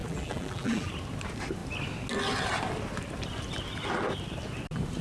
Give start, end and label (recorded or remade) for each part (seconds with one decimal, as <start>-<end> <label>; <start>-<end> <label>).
0.0-0.9 remade; 0.9-5.0 recorded